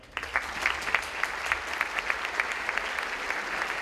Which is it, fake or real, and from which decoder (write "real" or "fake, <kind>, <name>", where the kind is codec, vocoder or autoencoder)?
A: real